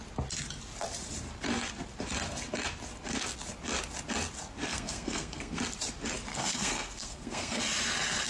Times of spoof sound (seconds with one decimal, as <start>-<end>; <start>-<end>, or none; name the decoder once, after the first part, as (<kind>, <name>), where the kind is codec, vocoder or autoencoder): 4.6-5.6 (codec, SNAC); 6.3-7.6